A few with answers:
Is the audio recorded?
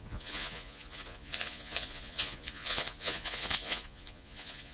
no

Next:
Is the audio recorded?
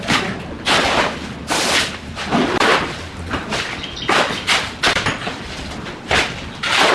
yes